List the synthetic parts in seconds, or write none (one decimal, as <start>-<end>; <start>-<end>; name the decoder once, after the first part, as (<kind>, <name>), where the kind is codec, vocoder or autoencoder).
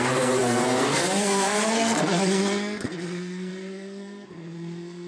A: 0.0-5.1 (codec, SNAC)